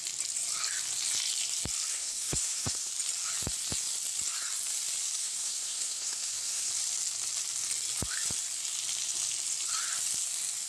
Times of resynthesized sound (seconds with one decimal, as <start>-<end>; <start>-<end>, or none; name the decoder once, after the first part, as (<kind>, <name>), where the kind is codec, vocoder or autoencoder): 1.9-2.9 (codec, SNAC); 5.2-6.7